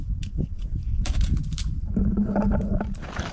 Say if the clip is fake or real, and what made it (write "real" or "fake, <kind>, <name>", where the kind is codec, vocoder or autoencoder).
fake, vocoder, BigVGAN v2